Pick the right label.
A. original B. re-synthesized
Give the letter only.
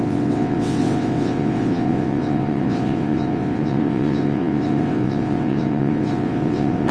B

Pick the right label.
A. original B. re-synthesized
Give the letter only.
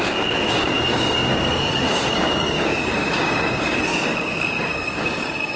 B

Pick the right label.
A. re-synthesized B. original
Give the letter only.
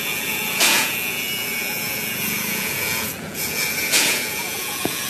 A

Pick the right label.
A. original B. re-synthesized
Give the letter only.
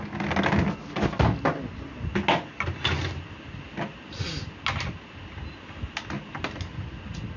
A